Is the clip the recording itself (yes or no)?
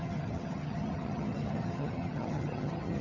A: no